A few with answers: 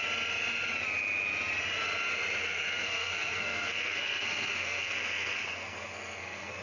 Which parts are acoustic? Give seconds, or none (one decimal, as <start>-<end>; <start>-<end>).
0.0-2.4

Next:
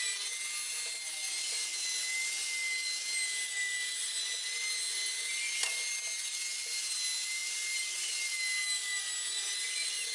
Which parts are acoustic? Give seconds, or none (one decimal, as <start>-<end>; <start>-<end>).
0.0-10.1

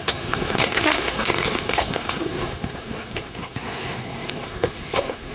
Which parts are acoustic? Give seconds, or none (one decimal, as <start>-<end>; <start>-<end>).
none